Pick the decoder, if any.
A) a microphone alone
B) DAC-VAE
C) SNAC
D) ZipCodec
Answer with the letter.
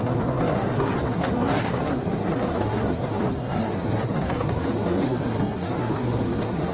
C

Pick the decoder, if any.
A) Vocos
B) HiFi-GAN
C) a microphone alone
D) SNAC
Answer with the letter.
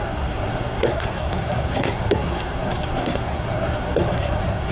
D